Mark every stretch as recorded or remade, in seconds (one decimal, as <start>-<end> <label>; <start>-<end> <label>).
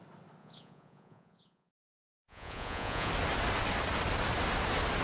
0.0-0.4 recorded; 0.4-3.1 remade; 3.1-5.0 recorded